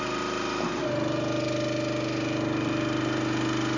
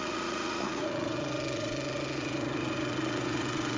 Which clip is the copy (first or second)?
second